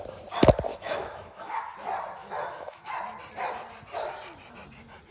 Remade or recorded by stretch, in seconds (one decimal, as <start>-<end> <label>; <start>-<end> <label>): 0.0-0.7 recorded; 0.7-1.5 remade; 1.5-2.2 recorded; 2.2-2.9 remade; 2.9-5.1 recorded